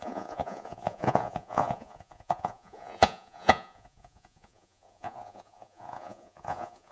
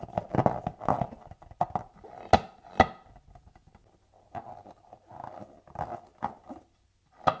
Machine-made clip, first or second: first